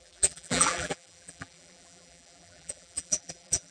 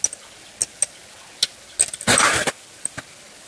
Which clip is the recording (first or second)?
second